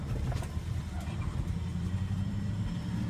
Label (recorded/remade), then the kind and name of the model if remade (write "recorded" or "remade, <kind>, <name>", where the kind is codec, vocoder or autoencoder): recorded